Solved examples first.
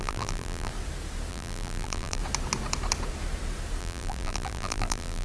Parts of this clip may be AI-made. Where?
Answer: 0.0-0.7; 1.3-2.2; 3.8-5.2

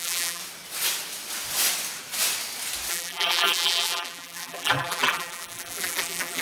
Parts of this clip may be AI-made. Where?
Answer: 0.0-0.4; 2.9-6.4

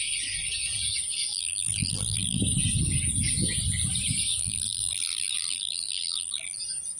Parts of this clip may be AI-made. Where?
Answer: 1.3-2.4; 4.4-6.6